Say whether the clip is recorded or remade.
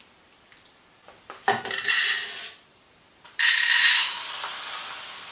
recorded